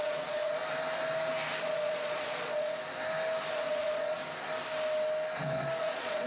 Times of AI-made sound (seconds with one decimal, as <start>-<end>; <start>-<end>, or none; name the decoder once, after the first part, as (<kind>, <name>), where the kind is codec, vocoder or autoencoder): 0.0-0.6 (vocoder, Vocos); 1.6-2.8; 3.5-4.2; 5.8-6.3